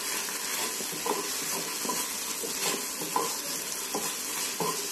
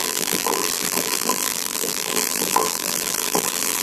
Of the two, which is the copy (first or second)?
second